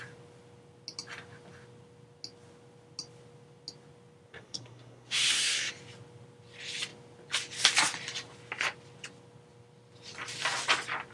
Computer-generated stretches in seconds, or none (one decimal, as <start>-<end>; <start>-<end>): 4.3-5.7